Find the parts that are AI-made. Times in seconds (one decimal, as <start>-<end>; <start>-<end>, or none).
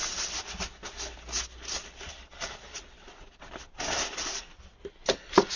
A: none